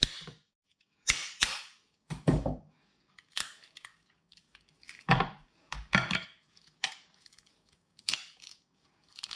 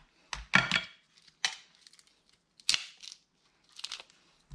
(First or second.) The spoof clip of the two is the first